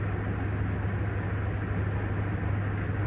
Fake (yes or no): no